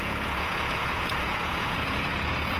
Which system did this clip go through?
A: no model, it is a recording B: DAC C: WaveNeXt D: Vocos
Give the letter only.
D